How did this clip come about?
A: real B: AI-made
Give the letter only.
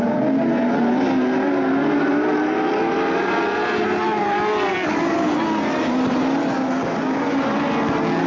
A